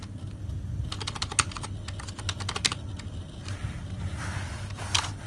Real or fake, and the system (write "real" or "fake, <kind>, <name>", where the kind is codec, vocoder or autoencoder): real